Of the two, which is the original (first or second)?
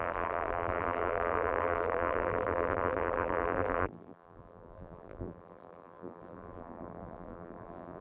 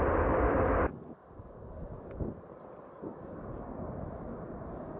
second